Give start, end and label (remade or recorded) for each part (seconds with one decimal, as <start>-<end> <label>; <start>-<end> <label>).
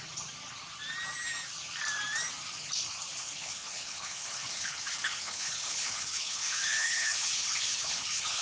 0.0-3.2 recorded; 3.2-8.4 remade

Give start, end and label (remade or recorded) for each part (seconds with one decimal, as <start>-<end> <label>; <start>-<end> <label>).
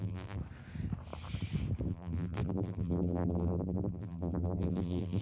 0.0-0.4 remade; 0.4-1.9 recorded; 1.9-5.2 remade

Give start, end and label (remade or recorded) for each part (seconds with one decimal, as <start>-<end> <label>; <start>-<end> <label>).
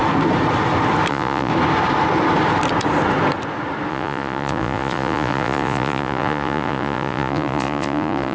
0.0-1.1 recorded; 1.1-1.5 remade; 1.5-3.9 recorded; 3.9-8.3 remade